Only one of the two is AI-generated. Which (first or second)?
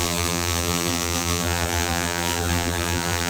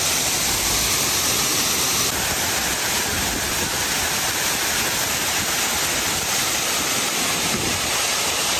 first